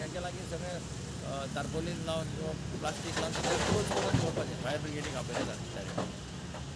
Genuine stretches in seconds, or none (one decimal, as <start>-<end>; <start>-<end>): 1.2-6.8